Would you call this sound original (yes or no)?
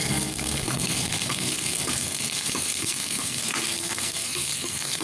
no